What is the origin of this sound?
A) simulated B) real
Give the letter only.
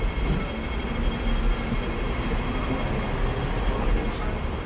B